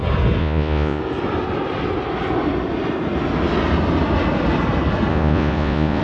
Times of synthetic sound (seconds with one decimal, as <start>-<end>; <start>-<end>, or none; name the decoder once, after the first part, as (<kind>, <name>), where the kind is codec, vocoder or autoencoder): 0.4-1.0 (vocoder, Vocos); 5.1-6.0